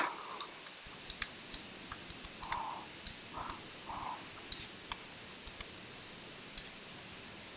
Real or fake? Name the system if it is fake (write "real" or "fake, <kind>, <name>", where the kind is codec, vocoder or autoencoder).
real